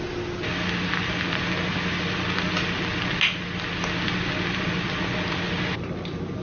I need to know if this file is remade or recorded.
recorded